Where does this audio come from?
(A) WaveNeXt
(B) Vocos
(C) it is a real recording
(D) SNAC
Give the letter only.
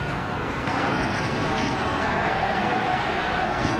D